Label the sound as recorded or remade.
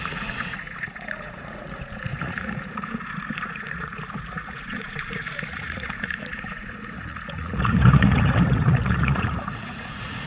remade